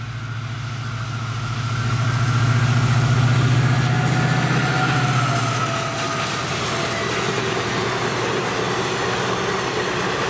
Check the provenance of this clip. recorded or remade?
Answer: recorded